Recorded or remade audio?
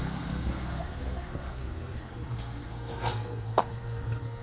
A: remade